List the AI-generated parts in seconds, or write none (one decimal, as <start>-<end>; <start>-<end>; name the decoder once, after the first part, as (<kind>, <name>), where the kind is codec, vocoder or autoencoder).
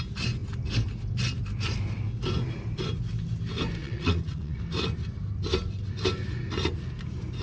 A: 3.8-4.6 (vocoder, WaveNeXt)